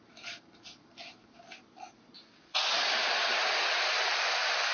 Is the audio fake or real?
real